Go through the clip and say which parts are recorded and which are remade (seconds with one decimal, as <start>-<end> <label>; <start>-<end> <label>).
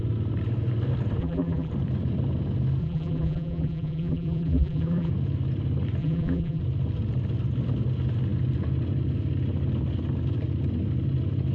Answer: 0.0-1.2 recorded; 1.2-1.7 remade; 1.7-2.8 recorded; 2.8-5.1 remade; 5.1-6.0 recorded; 6.0-6.6 remade; 6.6-11.5 recorded